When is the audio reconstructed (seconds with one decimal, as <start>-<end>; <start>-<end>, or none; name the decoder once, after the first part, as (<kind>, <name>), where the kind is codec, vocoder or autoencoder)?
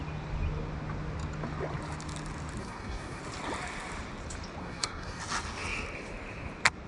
2.6-3.2 (codec, SNAC); 4.6-5.2